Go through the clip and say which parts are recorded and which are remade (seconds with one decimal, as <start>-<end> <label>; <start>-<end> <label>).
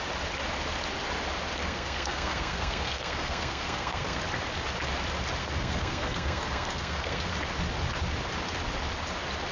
0.0-1.6 recorded; 1.6-4.2 remade; 4.2-5.4 recorded; 5.4-7.3 remade; 7.3-9.5 recorded